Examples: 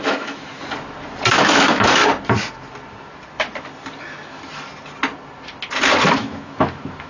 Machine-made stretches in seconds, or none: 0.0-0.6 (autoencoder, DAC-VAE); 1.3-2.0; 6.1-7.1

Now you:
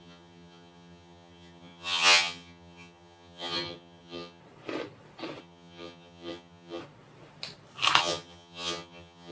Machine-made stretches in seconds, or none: 0.0-4.4 (vocoder, HiFi-GAN); 5.4-6.8; 8.0-9.3

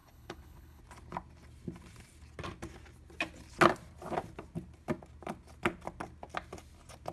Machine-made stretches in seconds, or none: 0.0-0.8 (codec, HILCodec)

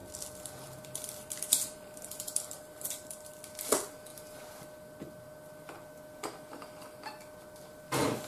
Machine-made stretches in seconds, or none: 0.0-3.3 (vocoder, BigVGAN v2)